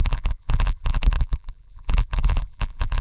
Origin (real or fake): fake